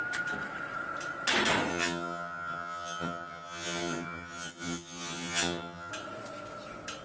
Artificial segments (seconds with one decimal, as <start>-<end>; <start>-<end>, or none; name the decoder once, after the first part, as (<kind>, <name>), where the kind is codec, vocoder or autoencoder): 1.7-5.9 (vocoder, HiFi-GAN)